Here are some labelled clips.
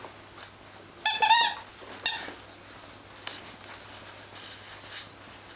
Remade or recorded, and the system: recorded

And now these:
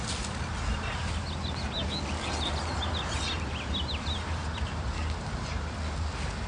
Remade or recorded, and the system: recorded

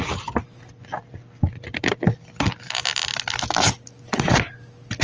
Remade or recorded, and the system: recorded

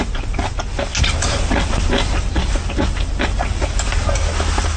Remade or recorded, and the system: recorded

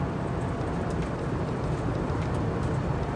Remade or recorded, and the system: recorded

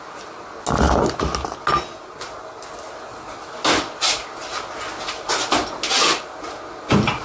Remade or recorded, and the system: recorded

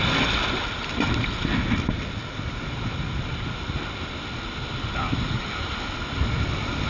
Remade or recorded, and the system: recorded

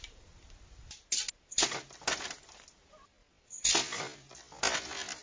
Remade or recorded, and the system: recorded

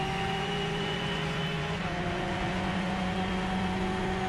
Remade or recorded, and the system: remade, vocoder, Vocos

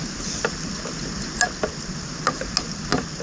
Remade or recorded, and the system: recorded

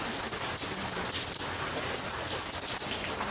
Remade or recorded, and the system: recorded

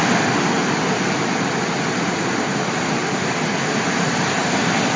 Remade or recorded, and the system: recorded